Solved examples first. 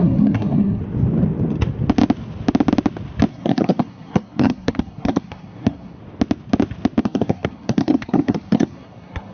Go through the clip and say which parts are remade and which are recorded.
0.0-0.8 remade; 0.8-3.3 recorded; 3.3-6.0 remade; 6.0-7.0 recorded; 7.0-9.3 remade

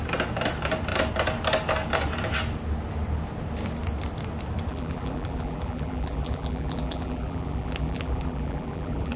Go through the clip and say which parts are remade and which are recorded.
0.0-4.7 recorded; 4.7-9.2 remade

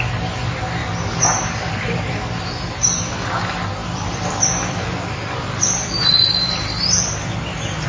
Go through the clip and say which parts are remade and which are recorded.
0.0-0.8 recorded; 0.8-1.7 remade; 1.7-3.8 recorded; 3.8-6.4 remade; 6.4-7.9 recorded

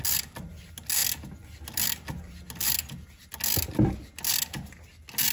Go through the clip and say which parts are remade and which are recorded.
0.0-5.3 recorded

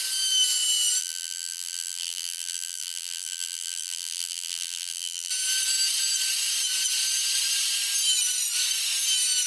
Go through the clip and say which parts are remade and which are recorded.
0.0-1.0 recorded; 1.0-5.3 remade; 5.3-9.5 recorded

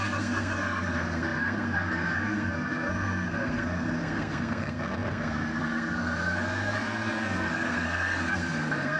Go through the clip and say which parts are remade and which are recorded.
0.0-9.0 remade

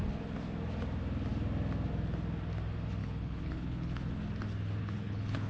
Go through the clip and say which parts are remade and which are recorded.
0.0-3.0 recorded; 3.0-4.1 remade; 4.1-4.8 recorded; 4.8-5.5 remade